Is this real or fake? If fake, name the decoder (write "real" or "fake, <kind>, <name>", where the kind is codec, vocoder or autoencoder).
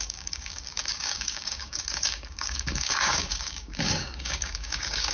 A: fake, codec, DAC